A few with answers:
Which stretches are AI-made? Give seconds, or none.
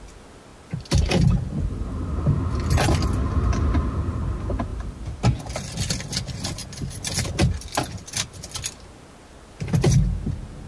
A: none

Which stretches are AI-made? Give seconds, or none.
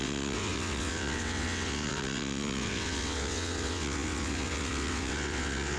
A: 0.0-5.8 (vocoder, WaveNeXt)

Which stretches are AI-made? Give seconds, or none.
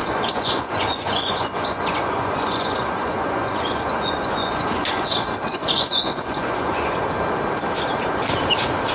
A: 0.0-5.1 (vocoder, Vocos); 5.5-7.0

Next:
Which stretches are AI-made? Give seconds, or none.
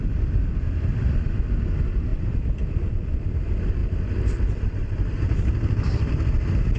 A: 0.9-1.4 (vocoder, BigVGAN v2); 2.1-3.3; 3.8-6.1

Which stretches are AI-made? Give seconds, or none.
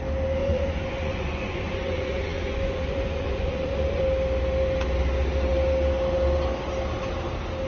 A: 0.4-4.0 (vocoder, Vocos)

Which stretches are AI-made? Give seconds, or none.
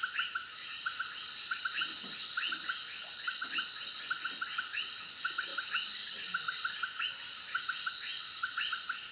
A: none